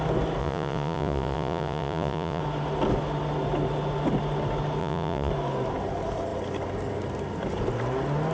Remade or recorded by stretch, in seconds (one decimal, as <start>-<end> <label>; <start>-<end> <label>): 0.0-0.4 recorded; 0.4-2.4 remade; 2.4-4.8 recorded; 4.8-5.3 remade; 5.3-8.3 recorded